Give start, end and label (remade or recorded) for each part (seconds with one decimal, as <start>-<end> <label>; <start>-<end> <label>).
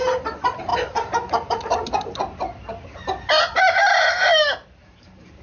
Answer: 0.0-0.7 remade; 0.7-3.9 recorded; 3.9-5.4 remade